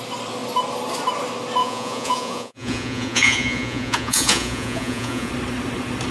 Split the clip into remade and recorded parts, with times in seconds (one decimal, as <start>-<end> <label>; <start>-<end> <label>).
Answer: 0.0-1.6 recorded; 1.6-5.3 remade; 5.3-6.1 recorded